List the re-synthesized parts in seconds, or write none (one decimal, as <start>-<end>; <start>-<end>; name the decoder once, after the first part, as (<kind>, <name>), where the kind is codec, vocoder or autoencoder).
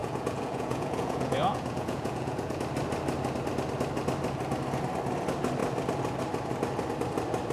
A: 0.0-2.6 (vocoder, Vocos)